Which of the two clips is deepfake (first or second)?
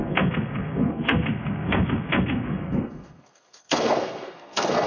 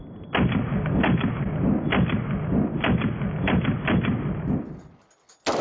first